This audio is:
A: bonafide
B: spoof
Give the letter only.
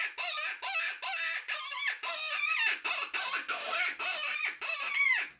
B